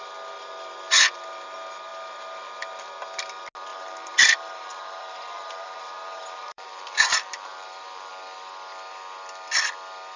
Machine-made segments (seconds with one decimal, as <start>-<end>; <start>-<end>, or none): 3.7-8.1